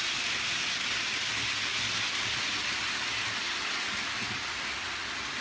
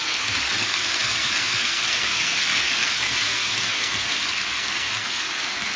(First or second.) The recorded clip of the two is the first